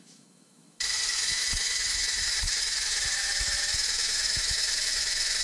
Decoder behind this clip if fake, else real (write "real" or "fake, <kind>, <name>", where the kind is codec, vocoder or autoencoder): fake, autoencoder, DAC-VAE